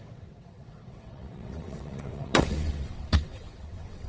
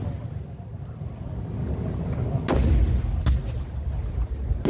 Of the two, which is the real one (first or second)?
second